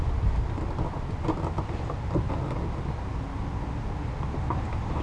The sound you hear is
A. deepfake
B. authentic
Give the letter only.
B